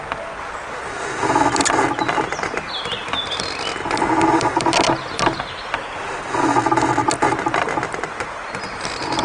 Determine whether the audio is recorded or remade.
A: recorded